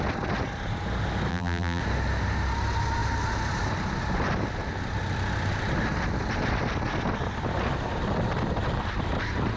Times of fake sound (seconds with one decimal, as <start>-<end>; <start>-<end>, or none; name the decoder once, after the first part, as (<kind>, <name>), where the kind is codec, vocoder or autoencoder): 1.3-1.8 (vocoder, BigVGAN v2)